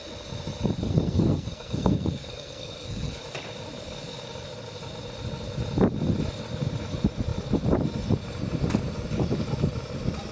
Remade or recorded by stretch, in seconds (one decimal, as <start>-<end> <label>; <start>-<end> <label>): 0.0-0.8 recorded; 0.8-3.2 remade; 3.2-10.3 recorded